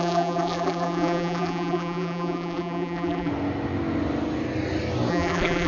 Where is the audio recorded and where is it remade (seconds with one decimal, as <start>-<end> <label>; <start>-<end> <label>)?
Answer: 0.0-3.3 remade; 3.3-5.1 recorded; 5.1-5.7 remade